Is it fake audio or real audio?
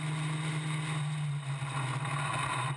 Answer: real